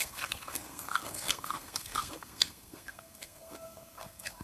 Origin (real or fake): fake